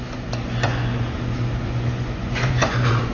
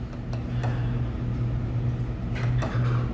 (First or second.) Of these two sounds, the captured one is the second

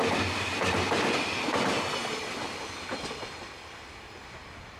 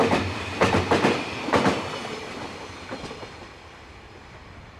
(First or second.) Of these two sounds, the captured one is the first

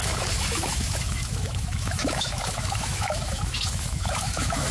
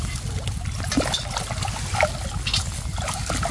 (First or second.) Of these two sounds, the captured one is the second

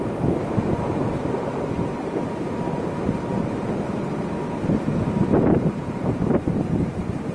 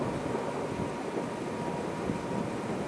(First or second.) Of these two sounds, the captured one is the second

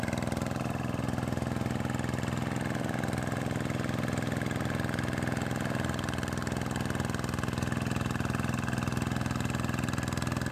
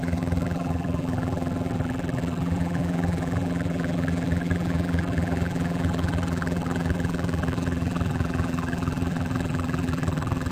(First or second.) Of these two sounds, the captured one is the first